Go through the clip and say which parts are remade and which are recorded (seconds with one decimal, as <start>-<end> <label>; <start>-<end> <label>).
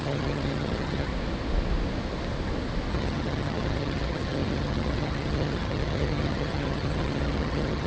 0.0-1.1 remade; 1.1-2.9 recorded; 2.9-7.9 remade